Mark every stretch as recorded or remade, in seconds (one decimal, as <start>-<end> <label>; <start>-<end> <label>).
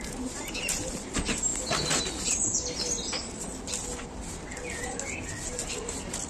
0.0-6.3 recorded